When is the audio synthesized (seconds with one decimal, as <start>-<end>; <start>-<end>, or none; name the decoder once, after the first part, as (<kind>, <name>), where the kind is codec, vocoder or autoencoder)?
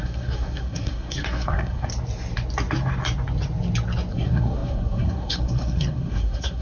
0.0-1.9 (codec, SNAC); 4.1-6.6